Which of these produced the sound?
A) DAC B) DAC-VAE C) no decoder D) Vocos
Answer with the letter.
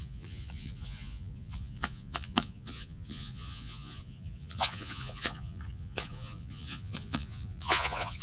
D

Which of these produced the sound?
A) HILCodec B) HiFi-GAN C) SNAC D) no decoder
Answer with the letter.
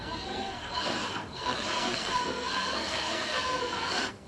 C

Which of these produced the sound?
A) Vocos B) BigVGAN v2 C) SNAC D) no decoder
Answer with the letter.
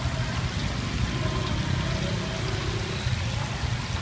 D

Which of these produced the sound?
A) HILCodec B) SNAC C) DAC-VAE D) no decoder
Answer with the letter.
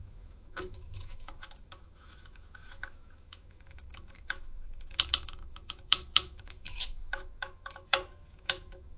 C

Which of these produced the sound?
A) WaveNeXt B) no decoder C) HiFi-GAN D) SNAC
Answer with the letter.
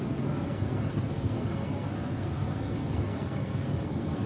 D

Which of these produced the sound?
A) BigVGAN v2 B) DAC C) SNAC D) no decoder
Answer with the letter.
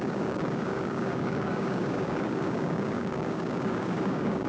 B